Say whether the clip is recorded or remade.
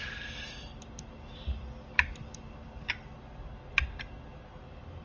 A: recorded